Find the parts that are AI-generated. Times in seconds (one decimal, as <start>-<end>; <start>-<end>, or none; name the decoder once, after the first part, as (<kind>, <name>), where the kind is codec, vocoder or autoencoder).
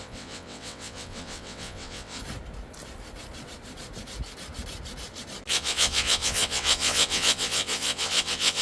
0.0-2.2 (vocoder, WaveNeXt); 5.5-8.6